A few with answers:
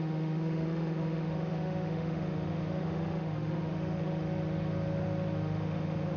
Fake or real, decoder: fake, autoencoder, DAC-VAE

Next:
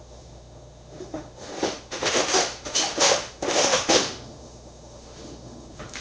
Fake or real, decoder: fake, autoencoder, DAC-VAE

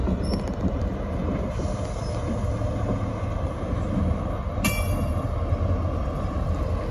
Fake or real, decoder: real